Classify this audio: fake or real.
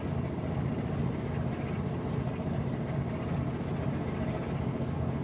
real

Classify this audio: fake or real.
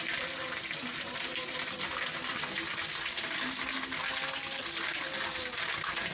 real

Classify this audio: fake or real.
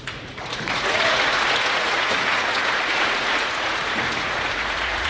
fake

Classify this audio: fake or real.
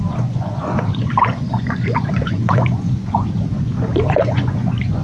fake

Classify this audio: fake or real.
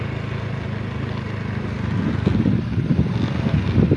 real